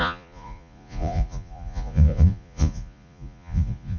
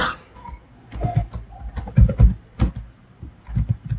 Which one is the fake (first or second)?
first